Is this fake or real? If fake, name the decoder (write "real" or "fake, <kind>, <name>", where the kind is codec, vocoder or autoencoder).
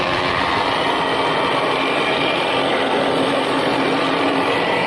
real